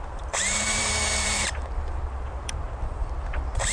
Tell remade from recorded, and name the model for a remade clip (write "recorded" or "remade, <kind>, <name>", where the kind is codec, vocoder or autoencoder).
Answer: remade, vocoder, BigVGAN v2